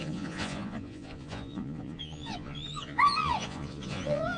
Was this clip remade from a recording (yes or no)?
yes